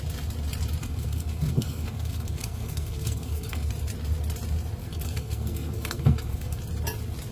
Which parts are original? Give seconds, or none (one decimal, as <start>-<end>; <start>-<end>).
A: 0.0-0.8; 3.7-4.8; 6.6-7.3